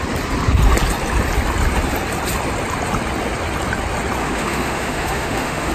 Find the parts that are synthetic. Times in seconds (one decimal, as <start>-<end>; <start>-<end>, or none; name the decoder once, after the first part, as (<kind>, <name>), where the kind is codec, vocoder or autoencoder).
4.2-5.7 (autoencoder, DAC-VAE)